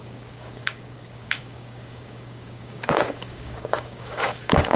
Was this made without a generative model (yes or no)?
no